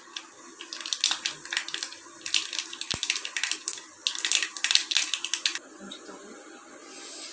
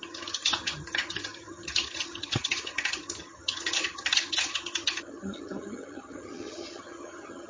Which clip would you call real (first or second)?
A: first